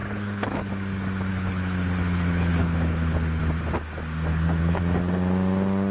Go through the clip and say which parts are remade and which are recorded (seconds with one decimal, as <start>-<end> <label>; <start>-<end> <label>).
0.0-0.7 remade; 0.7-1.3 recorded; 1.3-3.4 remade; 3.4-4.3 recorded; 4.3-4.8 remade; 4.8-5.9 recorded